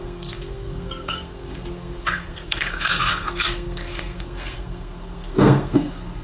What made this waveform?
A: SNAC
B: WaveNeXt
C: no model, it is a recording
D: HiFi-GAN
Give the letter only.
A